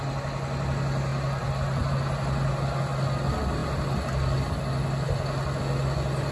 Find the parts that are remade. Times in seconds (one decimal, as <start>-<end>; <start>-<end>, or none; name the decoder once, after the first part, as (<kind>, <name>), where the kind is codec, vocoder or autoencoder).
none